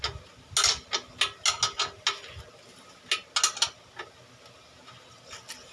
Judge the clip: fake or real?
real